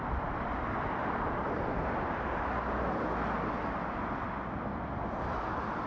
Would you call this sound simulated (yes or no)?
no